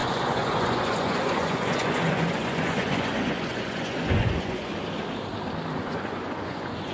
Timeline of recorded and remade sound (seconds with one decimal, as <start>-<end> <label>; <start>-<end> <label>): 0.0-4.7 remade; 4.7-5.7 recorded; 5.7-6.9 remade